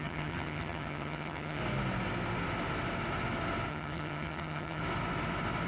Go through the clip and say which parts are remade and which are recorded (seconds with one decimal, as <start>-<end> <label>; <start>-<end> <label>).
0.0-1.6 remade; 1.6-3.7 recorded; 3.7-4.8 remade; 4.8-5.7 recorded